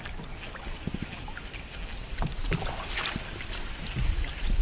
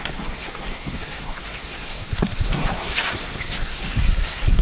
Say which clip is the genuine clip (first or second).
first